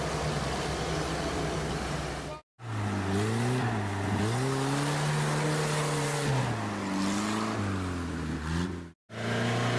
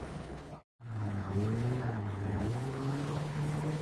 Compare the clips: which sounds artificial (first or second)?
second